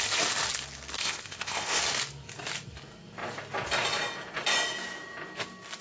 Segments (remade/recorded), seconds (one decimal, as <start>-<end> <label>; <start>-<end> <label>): 0.0-1.0 recorded; 1.0-1.8 remade; 1.8-5.8 recorded